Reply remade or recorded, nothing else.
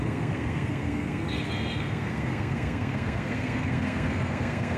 remade